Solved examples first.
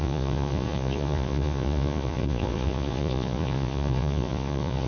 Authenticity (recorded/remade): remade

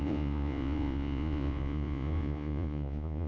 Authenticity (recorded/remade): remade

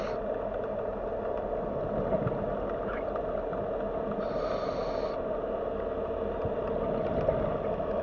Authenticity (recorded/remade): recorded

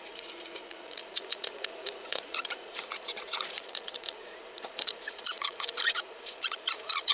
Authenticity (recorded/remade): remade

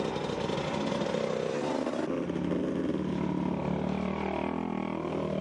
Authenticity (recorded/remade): recorded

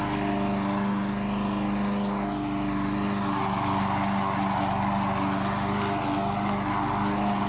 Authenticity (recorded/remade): recorded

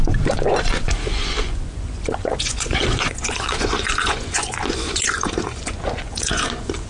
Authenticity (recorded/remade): remade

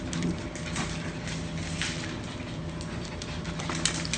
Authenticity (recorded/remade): recorded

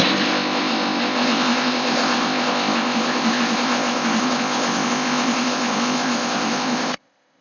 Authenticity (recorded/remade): remade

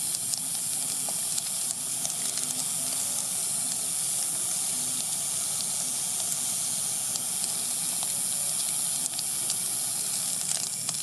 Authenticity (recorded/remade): recorded